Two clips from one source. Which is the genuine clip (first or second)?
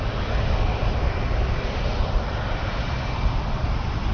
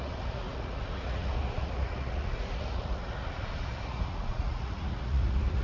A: first